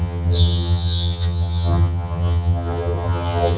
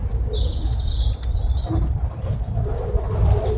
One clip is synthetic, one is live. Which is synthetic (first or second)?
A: first